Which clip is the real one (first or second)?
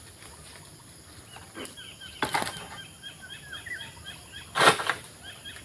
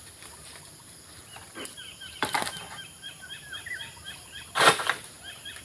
first